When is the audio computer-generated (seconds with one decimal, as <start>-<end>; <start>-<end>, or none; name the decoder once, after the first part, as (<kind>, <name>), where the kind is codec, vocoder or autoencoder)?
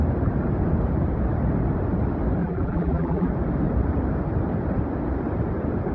2.4-3.3 (vocoder, BigVGAN v2)